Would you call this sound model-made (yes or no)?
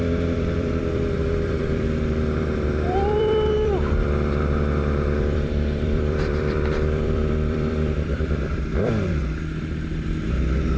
yes